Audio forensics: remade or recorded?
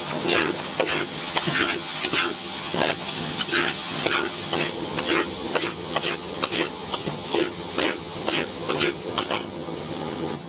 remade